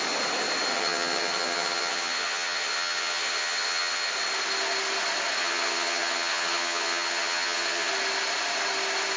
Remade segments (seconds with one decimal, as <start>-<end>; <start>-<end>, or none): 0.7-4.1; 5.4-7.9